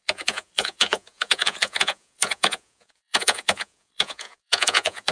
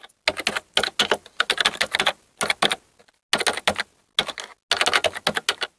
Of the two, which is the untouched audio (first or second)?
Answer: second